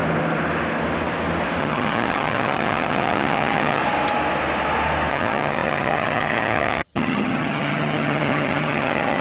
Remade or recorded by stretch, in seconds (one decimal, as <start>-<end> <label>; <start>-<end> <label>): 0.0-1.6 recorded; 1.6-3.8 remade; 3.8-5.1 recorded; 5.1-9.2 remade